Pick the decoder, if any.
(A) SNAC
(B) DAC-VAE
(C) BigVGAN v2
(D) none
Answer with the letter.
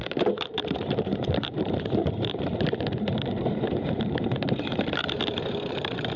C